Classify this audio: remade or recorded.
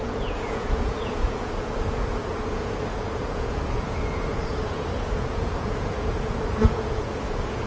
remade